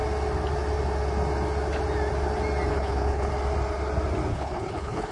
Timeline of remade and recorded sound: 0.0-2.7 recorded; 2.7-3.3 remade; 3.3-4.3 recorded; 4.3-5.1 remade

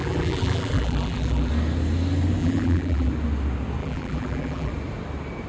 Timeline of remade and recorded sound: 0.0-1.5 remade; 1.5-2.4 recorded; 2.4-3.1 remade; 3.1-3.8 recorded; 3.8-4.7 remade; 4.7-5.5 recorded

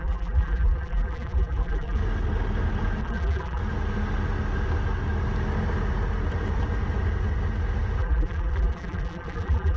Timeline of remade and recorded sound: 0.0-2.0 remade; 2.0-3.0 recorded; 3.0-3.6 remade; 3.6-8.0 recorded; 8.0-9.8 remade

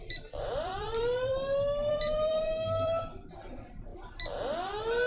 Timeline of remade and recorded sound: 0.0-1.3 remade; 1.3-1.9 recorded; 1.9-3.9 remade; 3.9-5.1 recorded

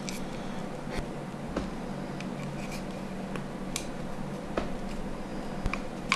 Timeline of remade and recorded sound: 0.0-6.2 recorded

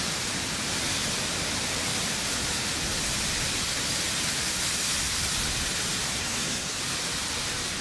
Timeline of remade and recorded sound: 0.0-6.2 recorded; 6.2-6.8 remade; 6.8-7.8 recorded

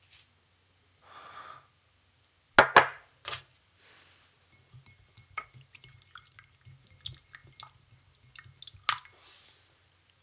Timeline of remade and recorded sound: 0.0-10.2 recorded

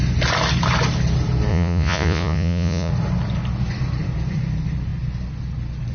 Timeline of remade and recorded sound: 0.0-1.5 recorded; 1.5-2.9 remade; 2.9-5.9 recorded